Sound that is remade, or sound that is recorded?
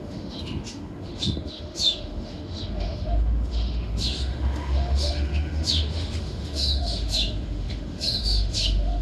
remade